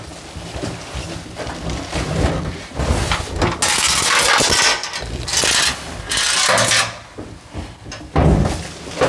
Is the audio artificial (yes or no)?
no